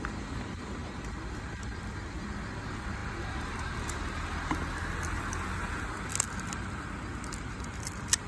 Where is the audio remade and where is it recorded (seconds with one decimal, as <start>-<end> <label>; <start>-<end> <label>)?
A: 0.0-8.3 recorded